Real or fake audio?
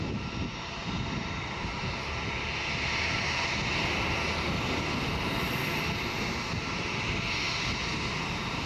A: real